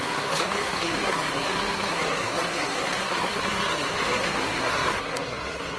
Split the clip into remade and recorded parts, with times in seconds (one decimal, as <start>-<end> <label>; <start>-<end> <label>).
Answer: 0.0-5.8 remade